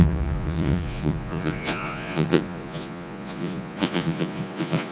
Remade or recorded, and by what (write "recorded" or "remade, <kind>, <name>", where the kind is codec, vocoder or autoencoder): remade, vocoder, Vocos